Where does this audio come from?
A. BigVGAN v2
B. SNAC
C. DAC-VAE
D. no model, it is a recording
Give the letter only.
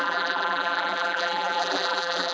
A